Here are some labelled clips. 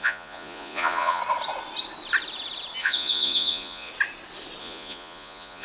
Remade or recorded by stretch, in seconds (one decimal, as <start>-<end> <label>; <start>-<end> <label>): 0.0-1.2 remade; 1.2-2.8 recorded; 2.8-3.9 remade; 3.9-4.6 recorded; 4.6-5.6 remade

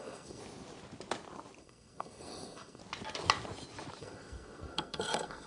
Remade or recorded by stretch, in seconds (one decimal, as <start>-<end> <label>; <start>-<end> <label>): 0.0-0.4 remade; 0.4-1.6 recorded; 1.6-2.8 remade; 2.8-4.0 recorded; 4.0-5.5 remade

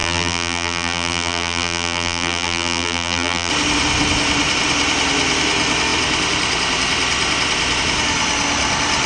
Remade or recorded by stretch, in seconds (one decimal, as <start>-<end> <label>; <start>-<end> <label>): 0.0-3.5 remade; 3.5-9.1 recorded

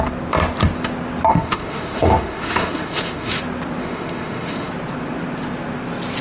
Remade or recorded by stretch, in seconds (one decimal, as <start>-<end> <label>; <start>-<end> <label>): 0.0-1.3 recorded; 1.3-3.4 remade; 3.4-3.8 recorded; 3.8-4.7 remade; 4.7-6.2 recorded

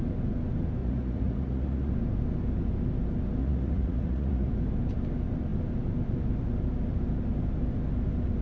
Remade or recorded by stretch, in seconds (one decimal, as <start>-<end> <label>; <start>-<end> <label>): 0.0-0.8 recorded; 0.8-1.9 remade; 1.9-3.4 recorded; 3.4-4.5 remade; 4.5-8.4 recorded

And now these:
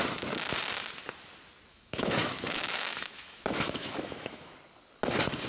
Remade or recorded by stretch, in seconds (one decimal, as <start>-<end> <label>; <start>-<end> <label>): 0.0-1.7 recorded; 1.7-4.5 remade; 4.5-5.5 recorded